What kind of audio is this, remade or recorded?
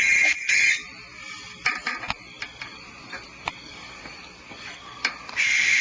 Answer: recorded